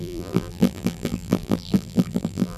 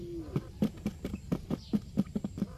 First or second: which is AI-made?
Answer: first